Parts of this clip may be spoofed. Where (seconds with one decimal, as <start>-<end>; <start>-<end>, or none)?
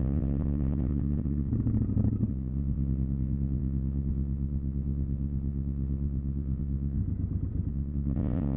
0.0-1.5; 2.3-7.0; 7.7-8.6